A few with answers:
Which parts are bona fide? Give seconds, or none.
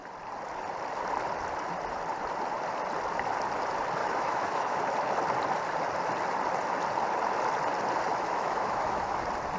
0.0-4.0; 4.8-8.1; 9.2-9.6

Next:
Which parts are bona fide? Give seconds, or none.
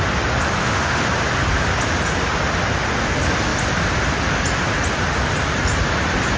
0.0-0.6; 1.1-6.4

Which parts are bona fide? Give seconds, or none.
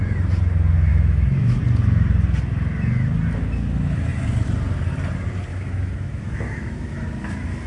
0.0-0.9; 1.6-5.5; 7.0-7.7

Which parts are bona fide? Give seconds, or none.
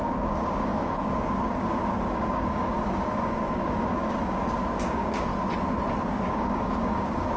5.3-6.1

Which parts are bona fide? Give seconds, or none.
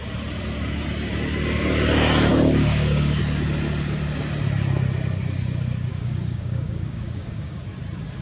0.0-2.3; 3.2-5.9; 7.6-8.2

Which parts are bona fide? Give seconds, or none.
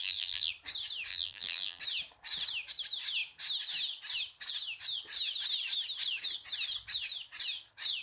0.5-1.1; 1.8-8.0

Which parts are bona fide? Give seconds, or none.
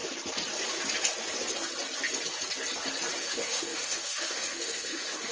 0.0-3.2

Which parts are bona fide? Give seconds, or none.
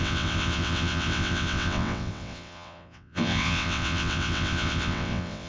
none